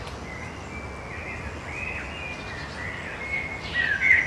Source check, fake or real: real